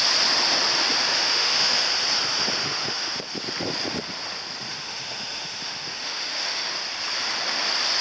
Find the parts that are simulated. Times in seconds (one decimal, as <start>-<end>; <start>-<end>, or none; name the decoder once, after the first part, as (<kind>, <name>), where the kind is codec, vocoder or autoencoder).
1.1-1.8 (autoencoder, DAC-VAE); 2.6-3.2; 4.7-6.7